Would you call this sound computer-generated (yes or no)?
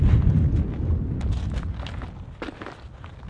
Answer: no